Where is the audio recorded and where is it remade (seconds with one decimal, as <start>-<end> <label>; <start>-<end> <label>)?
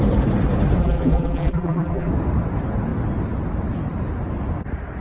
0.0-0.8 recorded; 0.8-2.1 remade; 2.1-5.0 recorded